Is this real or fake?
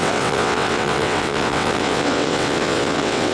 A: fake